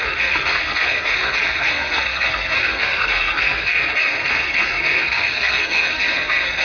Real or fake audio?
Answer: fake